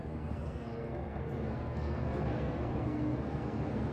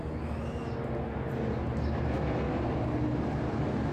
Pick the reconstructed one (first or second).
first